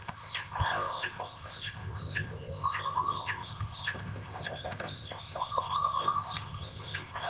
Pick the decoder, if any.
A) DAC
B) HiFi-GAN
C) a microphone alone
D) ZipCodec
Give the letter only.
D